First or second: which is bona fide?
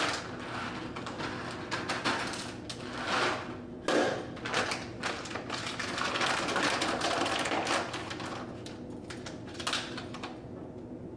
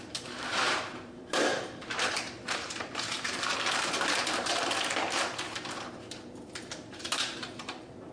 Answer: first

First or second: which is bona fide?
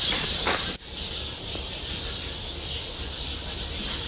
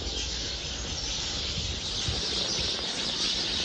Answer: second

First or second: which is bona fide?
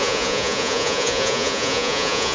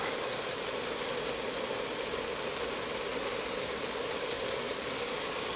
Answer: second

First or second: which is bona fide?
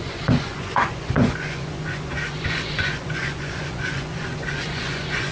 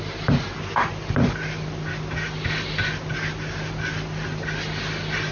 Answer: second